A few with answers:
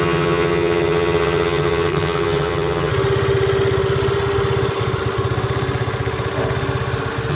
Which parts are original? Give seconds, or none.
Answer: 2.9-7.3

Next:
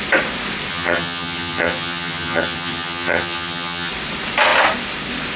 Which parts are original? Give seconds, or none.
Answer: 0.0-0.7; 3.9-5.4

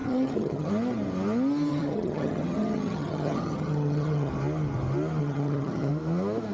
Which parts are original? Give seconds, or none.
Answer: 0.7-1.7; 4.3-5.2; 5.9-6.5

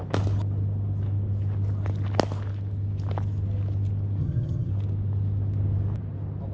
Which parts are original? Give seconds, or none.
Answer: 0.0-4.2; 4.7-6.5

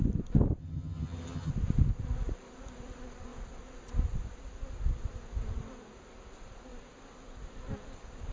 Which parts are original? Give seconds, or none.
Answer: 0.0-0.6; 1.5-8.3

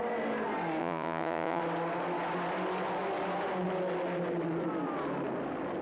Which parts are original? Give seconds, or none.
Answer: 0.0-0.8; 1.6-5.8

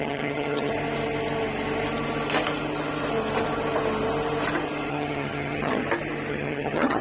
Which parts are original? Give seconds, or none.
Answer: 0.7-4.9; 5.8-6.3